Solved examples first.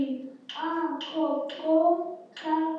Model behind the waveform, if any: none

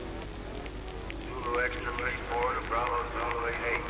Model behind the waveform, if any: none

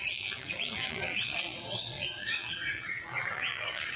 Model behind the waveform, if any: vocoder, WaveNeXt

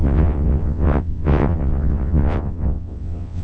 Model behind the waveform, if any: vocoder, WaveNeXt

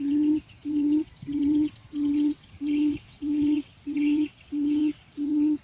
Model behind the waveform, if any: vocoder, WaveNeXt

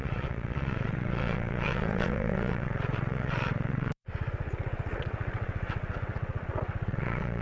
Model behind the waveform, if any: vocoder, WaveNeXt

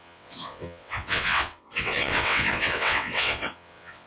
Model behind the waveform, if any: vocoder, WaveNeXt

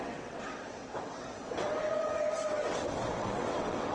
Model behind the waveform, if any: vocoder, WaveNeXt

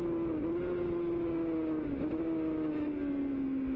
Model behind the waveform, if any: none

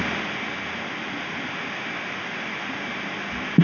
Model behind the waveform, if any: none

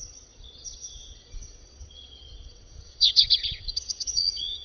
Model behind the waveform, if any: vocoder, WaveNeXt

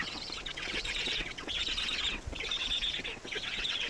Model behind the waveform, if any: vocoder, WaveNeXt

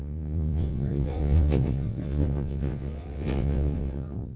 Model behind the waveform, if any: vocoder, WaveNeXt